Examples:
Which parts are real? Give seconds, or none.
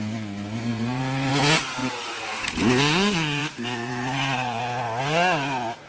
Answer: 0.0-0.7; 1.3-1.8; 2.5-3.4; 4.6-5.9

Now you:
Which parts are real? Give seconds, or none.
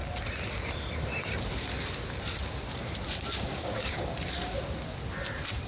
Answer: 0.0-3.5; 4.1-5.7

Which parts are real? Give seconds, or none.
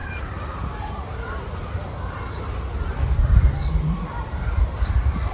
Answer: none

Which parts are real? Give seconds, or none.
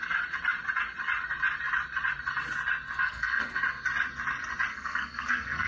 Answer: 0.0-3.0; 3.6-4.7